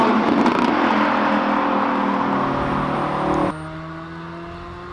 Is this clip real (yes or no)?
yes